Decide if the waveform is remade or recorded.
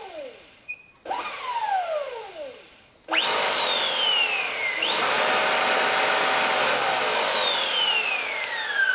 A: recorded